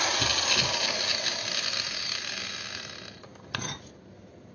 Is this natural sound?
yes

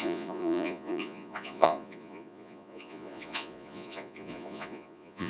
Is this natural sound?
no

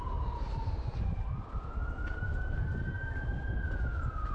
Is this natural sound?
yes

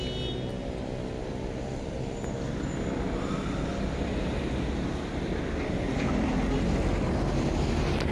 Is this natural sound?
yes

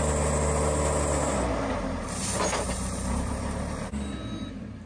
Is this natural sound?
yes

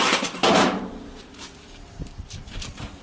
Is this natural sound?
no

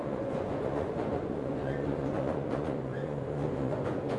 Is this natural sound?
no